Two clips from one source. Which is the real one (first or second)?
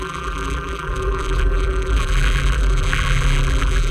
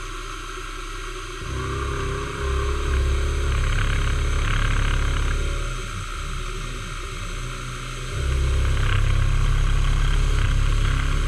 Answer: second